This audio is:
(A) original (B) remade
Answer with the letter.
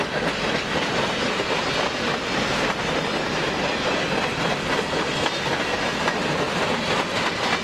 A